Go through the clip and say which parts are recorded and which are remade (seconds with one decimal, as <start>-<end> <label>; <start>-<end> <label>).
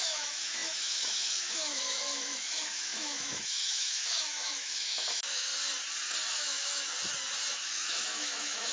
0.0-5.5 remade; 5.5-6.3 recorded; 6.3-6.9 remade; 6.9-7.5 recorded; 7.5-8.7 remade